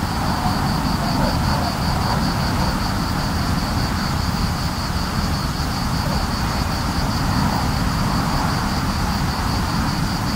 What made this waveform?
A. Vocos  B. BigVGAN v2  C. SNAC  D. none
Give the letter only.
B